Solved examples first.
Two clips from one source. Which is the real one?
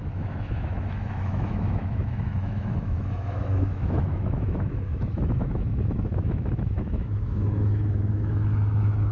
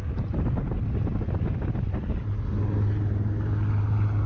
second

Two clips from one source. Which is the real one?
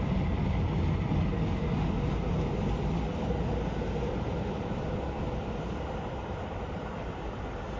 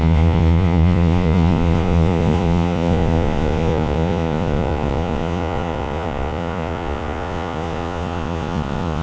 first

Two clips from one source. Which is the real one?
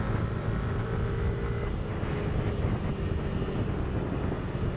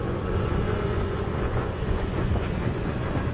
first